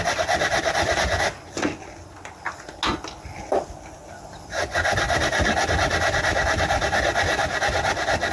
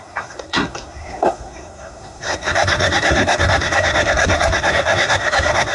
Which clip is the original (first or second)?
first